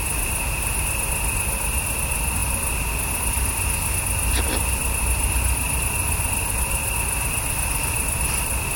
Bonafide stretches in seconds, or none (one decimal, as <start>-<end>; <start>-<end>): 0.0-8.8